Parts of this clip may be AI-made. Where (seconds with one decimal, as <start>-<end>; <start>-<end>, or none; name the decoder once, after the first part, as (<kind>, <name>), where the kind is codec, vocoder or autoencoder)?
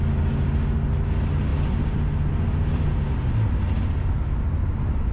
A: none